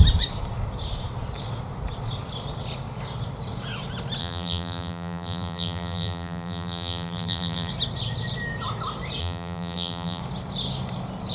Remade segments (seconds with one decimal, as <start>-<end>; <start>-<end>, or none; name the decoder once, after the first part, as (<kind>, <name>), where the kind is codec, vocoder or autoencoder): 4.2-7.7 (vocoder, BigVGAN v2); 9.2-10.2